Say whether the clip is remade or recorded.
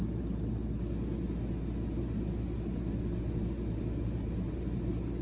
recorded